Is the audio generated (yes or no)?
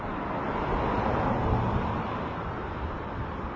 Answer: no